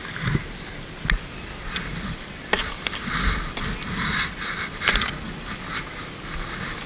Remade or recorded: recorded